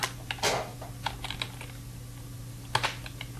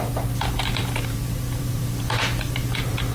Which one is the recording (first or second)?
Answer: first